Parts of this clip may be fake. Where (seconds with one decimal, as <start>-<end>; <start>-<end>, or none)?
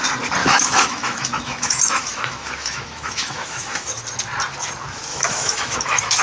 0.4-4.0; 5.1-6.2